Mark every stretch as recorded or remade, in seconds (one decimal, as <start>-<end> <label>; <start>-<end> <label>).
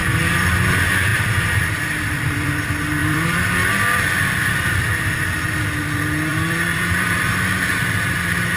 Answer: 0.0-0.5 remade; 0.5-1.1 recorded; 1.1-2.6 remade; 2.6-3.0 recorded; 3.0-3.7 remade; 3.7-6.3 recorded; 6.3-7.5 remade; 7.5-8.6 recorded